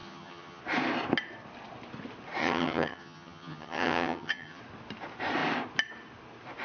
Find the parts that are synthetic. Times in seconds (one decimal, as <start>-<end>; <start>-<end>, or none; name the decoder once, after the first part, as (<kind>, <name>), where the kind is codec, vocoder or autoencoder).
0.0-0.6 (vocoder, HiFi-GAN); 2.4-4.6